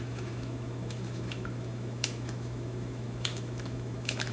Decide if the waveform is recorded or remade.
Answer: remade